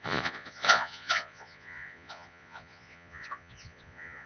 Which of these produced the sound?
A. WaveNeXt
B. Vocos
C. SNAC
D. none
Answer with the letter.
B